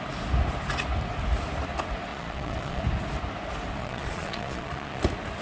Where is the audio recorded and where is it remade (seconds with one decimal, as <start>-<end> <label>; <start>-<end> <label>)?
0.0-2.1 recorded; 2.1-2.8 remade; 2.8-3.8 recorded; 3.8-5.0 remade; 5.0-5.4 recorded